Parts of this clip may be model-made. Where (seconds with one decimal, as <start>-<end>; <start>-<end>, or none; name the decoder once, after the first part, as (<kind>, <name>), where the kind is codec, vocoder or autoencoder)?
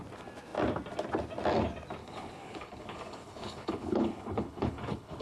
2.0-5.2 (codec, HILCodec)